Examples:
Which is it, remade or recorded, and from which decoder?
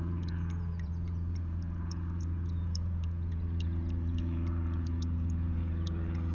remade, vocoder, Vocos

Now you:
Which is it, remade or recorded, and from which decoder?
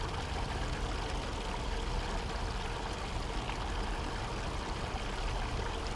recorded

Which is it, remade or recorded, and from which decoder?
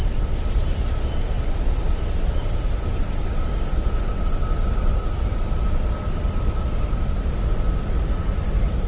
recorded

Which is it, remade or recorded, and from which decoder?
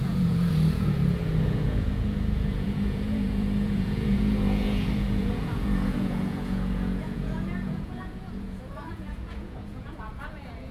remade, vocoder, Vocos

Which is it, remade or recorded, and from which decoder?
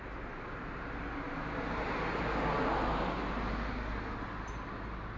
recorded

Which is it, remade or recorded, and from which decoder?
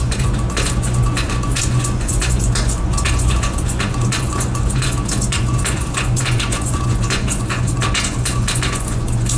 remade, vocoder, Vocos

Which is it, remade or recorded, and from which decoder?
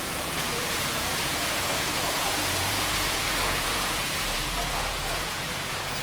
remade, vocoder, Vocos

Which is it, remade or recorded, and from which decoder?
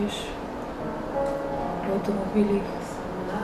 recorded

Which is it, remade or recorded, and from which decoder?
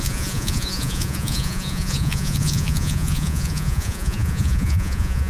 remade, vocoder, Vocos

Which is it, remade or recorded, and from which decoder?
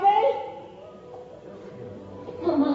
recorded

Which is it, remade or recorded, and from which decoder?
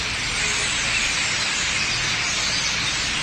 recorded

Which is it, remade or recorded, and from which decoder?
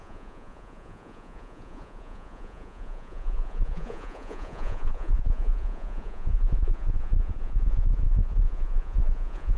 remade, vocoder, Vocos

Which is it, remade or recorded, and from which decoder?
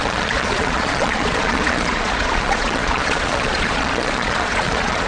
remade, vocoder, Vocos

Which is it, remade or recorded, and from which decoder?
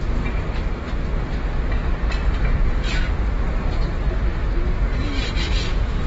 recorded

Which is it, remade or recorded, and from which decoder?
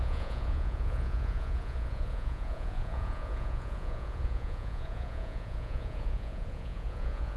remade, vocoder, Vocos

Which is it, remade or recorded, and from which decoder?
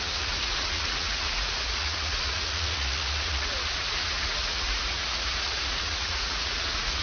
remade, vocoder, Vocos